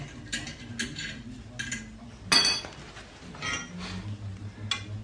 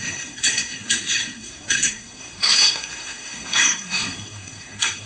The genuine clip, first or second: first